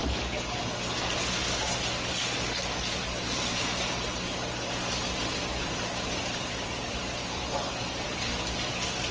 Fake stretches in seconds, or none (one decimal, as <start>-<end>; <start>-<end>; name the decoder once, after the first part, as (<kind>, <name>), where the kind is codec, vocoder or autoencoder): 5.1-9.1 (vocoder, BigVGAN v2)